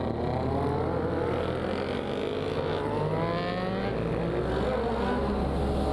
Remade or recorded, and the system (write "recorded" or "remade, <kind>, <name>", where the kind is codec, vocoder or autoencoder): recorded